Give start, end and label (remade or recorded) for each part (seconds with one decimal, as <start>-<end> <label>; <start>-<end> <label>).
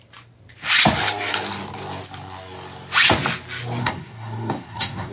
0.0-3.8 recorded; 3.8-5.1 remade